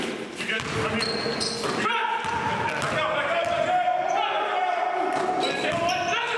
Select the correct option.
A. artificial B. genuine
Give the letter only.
B